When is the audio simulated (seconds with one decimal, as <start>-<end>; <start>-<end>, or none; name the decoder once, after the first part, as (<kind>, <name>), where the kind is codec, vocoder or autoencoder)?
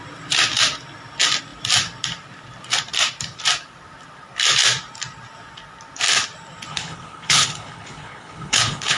6.7-9.0 (codec, HILCodec)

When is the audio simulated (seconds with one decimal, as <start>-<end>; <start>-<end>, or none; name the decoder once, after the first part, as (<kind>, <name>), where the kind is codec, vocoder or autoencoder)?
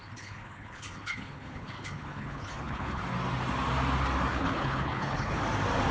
0.0-3.0 (codec, HILCodec); 4.3-5.4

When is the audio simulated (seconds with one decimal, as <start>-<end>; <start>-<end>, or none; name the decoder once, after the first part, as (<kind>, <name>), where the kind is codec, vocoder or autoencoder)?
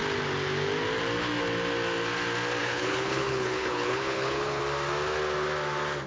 2.6-4.6 (codec, HILCodec)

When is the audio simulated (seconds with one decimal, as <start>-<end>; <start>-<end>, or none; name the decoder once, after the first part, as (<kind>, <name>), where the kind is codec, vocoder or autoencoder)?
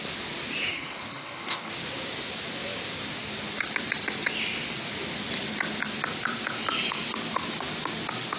0.7-1.7 (codec, HILCodec)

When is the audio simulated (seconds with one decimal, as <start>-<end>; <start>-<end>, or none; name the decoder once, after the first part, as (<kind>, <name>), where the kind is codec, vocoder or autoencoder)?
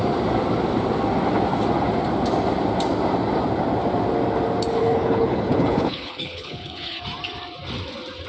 4.8-7.0 (codec, HILCodec)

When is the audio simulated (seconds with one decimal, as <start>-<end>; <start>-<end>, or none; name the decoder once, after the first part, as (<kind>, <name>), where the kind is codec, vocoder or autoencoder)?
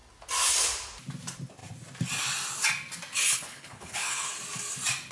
3.2-4.3 (codec, HILCodec)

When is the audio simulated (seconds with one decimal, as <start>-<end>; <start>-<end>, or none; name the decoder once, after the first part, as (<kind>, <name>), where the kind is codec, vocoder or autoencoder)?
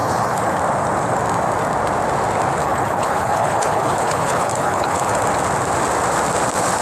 0.0-0.6 (codec, HILCodec); 2.6-5.2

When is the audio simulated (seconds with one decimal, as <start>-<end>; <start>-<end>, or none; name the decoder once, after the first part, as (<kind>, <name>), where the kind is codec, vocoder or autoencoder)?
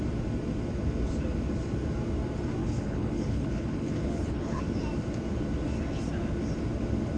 2.6-4.6 (codec, HILCodec)